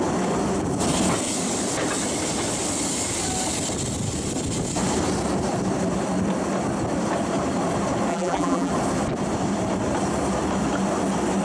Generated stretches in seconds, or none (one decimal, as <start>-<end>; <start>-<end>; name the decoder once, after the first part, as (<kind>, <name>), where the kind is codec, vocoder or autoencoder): 8.1-8.7 (vocoder, BigVGAN v2)